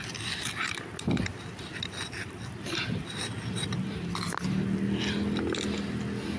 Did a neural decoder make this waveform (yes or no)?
no